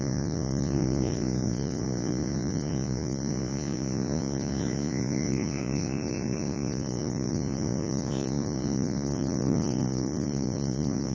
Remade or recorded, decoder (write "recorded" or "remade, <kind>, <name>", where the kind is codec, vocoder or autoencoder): remade, vocoder, Vocos